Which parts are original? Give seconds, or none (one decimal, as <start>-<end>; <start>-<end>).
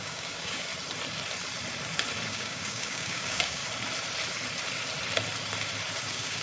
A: 0.7-2.3; 3.6-6.0